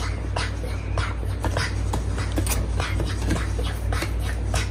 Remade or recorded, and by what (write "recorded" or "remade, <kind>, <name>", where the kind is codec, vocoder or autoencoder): recorded